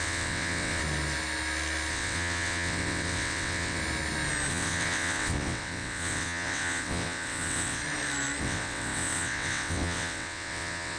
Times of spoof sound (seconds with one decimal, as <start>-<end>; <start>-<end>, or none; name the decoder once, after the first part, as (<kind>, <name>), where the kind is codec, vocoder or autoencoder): 0.0-0.8 (vocoder, WaveNeXt); 1.9-3.8; 4.5-7.8; 8.4-11.0